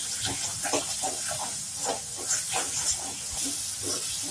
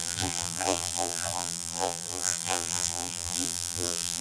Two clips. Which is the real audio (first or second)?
first